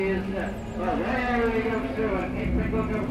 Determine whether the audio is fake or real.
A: real